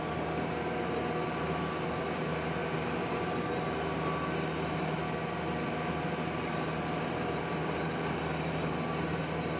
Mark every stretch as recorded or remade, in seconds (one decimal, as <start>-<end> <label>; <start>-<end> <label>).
0.0-9.6 recorded